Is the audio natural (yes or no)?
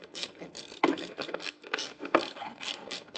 no